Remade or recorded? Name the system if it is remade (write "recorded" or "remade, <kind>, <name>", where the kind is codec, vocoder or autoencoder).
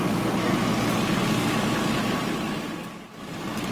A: recorded